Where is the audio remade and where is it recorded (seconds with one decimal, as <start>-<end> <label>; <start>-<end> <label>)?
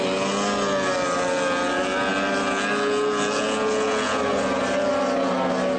0.0-5.8 recorded